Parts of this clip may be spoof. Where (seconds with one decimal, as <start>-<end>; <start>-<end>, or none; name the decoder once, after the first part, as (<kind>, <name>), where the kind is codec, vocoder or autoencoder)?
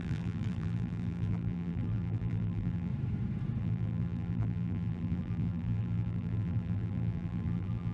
0.0-2.9 (vocoder, BigVGAN v2); 3.6-7.9